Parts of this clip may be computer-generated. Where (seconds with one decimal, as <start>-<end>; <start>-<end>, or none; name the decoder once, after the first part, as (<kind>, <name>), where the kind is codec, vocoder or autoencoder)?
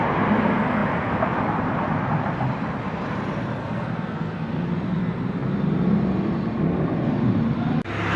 3.6-4.7 (codec, SNAC)